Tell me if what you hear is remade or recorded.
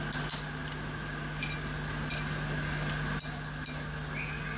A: recorded